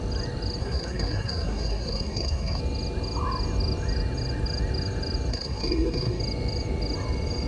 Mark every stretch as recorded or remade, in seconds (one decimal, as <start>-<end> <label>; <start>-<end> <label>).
0.0-0.6 recorded; 0.6-2.6 remade; 2.6-5.3 recorded; 5.3-6.2 remade; 6.2-7.5 recorded